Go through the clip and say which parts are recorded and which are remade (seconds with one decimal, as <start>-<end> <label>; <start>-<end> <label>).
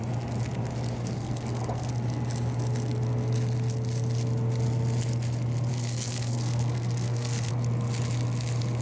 0.0-1.0 recorded; 1.0-1.9 remade; 1.9-5.7 recorded; 5.7-7.5 remade; 7.5-8.8 recorded